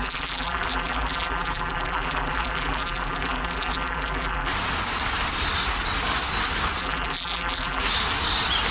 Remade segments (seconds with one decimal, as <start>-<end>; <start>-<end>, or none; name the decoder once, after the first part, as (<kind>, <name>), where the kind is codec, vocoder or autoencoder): 0.0-4.5 (vocoder, BigVGAN v2); 6.8-7.8